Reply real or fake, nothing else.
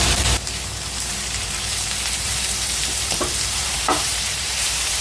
fake